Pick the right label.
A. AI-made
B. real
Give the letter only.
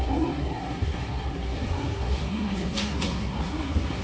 A